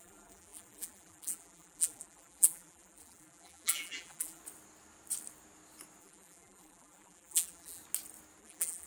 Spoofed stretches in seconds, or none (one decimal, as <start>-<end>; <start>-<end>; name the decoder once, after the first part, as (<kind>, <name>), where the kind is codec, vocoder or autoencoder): 0.0-4.4 (vocoder, BigVGAN v2); 6.0-7.8; 8.4-8.9